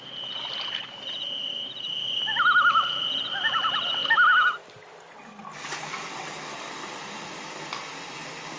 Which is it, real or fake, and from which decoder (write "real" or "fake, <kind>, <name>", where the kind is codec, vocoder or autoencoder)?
real